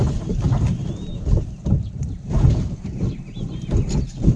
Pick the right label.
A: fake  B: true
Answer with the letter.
A